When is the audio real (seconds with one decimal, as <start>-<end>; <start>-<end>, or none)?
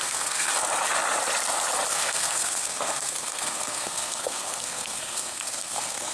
0.5-1.9